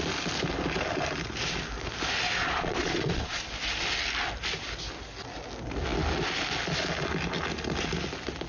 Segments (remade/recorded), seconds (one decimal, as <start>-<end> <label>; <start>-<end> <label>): 0.0-2.4 recorded; 2.4-3.4 remade; 3.4-8.5 recorded